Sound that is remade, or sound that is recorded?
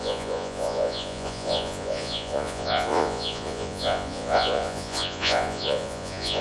remade